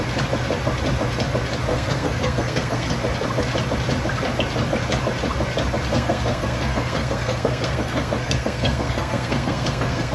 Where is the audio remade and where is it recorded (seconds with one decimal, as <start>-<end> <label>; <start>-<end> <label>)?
0.0-1.7 recorded; 1.7-2.9 remade; 2.9-5.9 recorded; 5.9-10.1 remade